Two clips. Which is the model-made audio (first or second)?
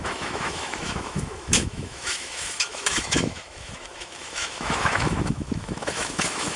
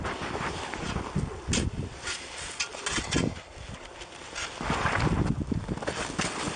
first